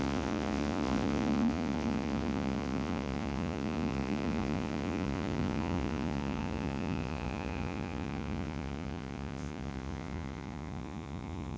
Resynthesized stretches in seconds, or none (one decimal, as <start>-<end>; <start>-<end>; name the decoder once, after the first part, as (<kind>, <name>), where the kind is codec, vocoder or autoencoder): 0.0-11.6 (vocoder, Vocos)